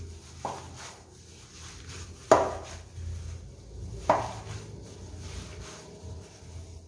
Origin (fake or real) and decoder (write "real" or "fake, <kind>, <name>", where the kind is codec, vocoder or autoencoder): real